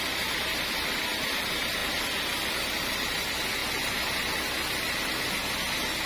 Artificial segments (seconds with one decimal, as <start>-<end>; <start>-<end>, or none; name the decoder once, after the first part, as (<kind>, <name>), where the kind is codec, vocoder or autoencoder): 0.0-1.8 (vocoder, BigVGAN v2); 2.5-3.6